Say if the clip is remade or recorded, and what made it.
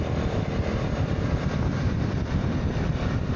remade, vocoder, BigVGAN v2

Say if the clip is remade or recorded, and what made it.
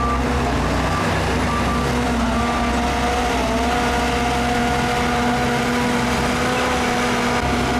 recorded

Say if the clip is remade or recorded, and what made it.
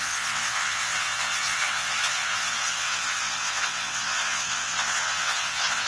remade, vocoder, WaveNeXt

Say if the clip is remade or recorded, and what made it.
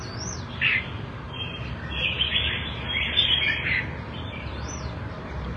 remade, vocoder, BigVGAN v2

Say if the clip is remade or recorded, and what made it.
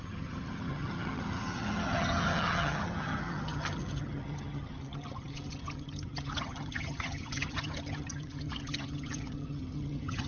remade, vocoder, HiFi-GAN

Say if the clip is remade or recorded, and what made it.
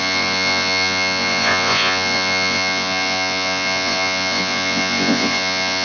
remade, vocoder, Vocos